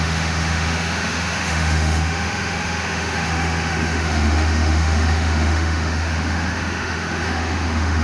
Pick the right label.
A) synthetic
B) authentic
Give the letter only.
A